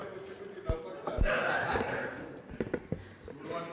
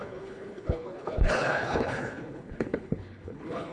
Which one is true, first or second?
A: first